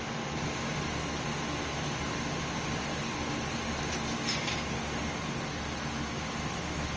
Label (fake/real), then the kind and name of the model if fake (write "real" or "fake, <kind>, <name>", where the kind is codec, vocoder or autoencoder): real